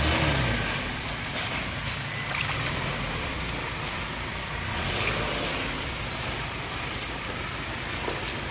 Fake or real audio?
real